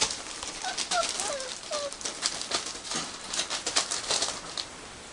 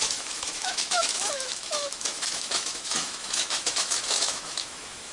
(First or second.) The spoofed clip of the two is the second